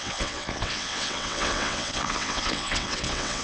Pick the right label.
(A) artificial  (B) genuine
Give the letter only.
A